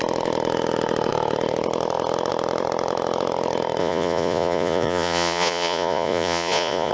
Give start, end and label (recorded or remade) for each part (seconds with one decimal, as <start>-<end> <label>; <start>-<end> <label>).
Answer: 0.0-3.8 recorded; 3.8-6.9 remade